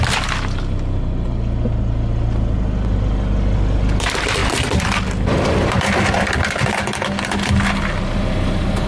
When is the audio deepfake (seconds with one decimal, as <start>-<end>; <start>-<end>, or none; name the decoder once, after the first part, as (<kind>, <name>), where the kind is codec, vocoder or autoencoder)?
4.4-6.7 (vocoder, BigVGAN v2)